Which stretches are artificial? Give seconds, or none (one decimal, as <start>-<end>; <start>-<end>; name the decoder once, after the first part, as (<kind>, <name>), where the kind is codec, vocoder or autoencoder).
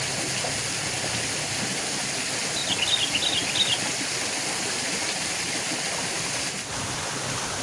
none